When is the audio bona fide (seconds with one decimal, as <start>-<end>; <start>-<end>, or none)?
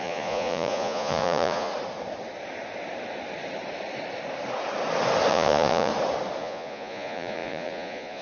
1.7-5.3; 5.9-6.4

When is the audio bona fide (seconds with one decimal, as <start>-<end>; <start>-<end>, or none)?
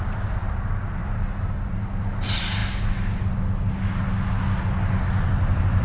0.0-1.0; 1.8-5.8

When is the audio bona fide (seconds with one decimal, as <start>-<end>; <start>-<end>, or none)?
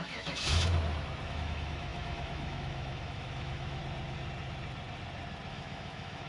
0.7-1.3; 3.8-5.5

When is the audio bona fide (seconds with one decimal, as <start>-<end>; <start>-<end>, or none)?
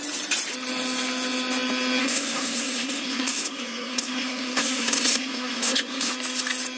0.0-2.0; 6.1-6.8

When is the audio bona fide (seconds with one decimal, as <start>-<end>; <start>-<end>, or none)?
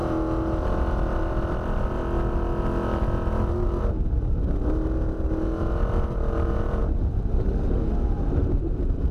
0.0-1.2; 2.0-5.7; 6.8-8.5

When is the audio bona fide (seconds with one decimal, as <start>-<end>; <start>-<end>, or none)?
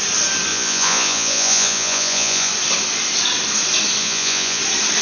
0.0-0.5; 2.5-4.0; 4.6-5.0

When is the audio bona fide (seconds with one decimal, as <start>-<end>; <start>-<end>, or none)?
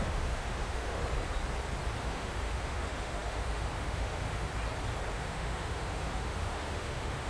1.0-2.0; 4.5-5.1